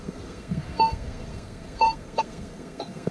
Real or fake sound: fake